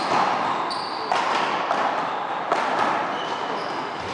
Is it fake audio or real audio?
real